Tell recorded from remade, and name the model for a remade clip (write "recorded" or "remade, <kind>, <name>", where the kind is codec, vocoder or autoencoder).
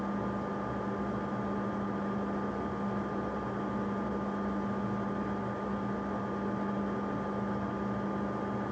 recorded